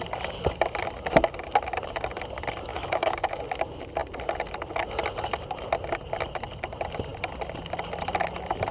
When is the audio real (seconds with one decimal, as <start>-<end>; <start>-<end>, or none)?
0.0-2.7; 3.4-8.7